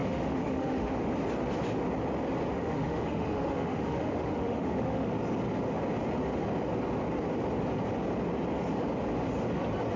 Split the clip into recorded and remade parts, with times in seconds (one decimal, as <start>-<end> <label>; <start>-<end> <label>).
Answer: 0.0-1.1 remade; 1.1-2.5 recorded; 2.5-5.1 remade; 5.1-10.0 recorded